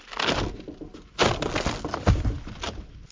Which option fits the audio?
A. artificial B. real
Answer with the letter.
B